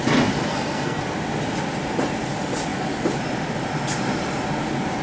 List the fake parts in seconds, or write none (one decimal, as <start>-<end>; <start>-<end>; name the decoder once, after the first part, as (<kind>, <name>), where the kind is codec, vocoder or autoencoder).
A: 0.5-1.0 (codec, SNAC)